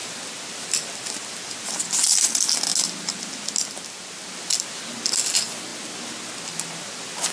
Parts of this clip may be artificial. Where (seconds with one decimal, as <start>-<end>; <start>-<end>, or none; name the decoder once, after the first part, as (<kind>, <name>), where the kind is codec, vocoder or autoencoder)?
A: none